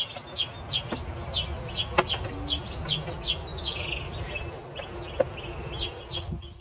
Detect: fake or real real